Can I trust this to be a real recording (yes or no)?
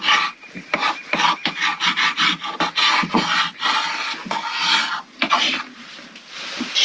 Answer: yes